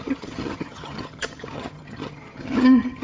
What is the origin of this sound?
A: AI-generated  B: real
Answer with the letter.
A